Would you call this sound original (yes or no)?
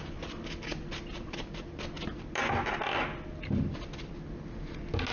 yes